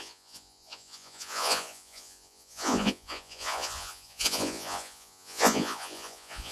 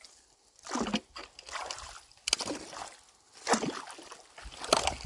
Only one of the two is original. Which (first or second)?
second